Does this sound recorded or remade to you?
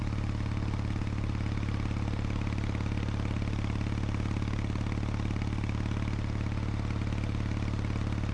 recorded